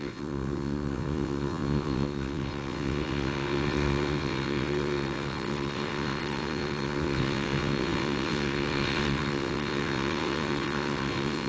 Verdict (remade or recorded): remade